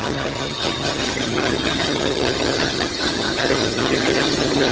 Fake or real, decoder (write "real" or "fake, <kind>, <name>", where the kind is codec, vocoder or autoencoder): fake, vocoder, HiFi-GAN